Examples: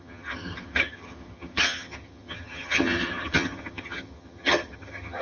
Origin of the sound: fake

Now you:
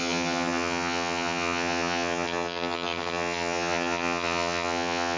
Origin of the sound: fake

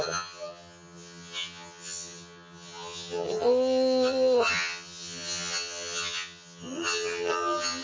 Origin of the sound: fake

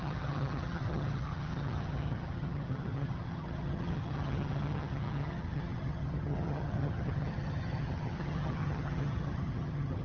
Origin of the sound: fake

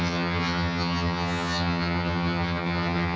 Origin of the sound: fake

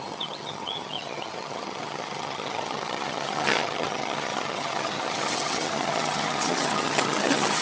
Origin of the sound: fake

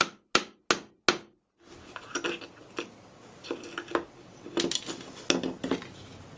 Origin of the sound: real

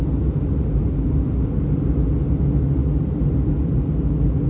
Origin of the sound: real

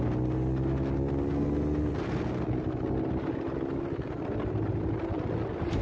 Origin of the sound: real